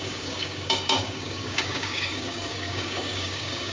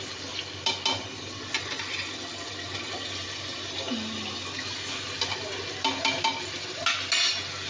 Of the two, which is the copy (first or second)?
first